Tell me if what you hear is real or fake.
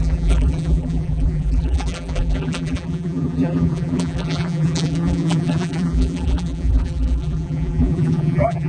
fake